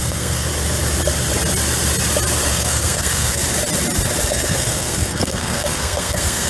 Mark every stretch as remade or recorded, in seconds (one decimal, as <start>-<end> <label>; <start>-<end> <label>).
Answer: 0.0-0.5 remade; 0.5-2.5 recorded; 2.5-3.4 remade; 3.4-4.3 recorded; 4.3-6.5 remade